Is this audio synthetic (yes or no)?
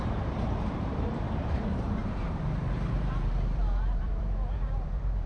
yes